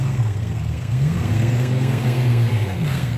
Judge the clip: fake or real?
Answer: fake